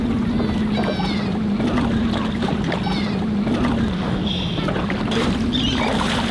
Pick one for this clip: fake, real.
real